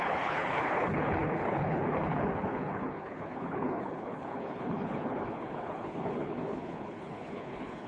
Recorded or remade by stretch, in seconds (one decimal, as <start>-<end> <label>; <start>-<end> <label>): 0.0-7.9 remade